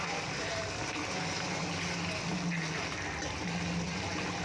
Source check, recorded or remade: recorded